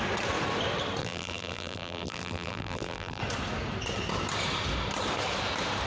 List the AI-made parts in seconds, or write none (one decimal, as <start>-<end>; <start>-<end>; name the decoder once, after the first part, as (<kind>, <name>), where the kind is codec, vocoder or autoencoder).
1.0-3.2 (vocoder, BigVGAN v2)

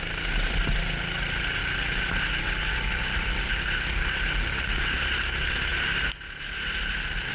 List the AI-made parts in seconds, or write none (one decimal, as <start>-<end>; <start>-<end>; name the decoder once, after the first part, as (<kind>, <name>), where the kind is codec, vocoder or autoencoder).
none

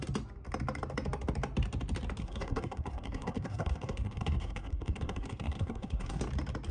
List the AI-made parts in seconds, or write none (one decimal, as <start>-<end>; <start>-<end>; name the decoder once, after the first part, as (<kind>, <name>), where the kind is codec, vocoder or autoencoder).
2.2-6.2 (codec, SNAC)

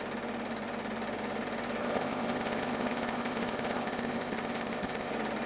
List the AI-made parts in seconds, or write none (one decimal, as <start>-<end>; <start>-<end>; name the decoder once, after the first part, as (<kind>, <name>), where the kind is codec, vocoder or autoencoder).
1.8-5.1 (codec, ZipCodec)

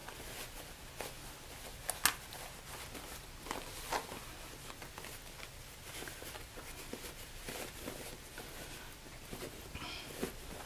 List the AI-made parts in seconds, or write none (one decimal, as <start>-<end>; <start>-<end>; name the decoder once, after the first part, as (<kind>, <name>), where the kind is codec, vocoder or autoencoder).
none

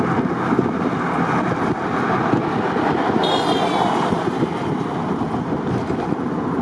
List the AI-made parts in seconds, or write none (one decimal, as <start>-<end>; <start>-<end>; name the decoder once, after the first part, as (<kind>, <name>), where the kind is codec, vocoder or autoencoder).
none

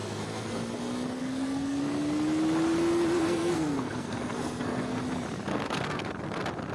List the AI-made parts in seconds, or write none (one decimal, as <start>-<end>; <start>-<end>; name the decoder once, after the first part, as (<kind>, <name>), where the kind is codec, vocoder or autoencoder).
0.0-0.5 (codec, SNAC); 1.2-1.8; 3.2-5.0; 5.5-6.1